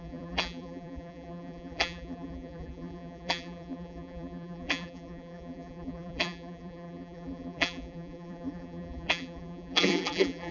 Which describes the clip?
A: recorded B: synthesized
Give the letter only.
B